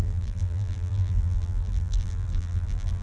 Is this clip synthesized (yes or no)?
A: yes